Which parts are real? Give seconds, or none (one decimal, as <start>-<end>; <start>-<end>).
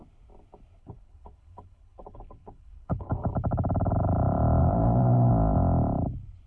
0.0-0.8; 3.2-4.6; 5.3-6.5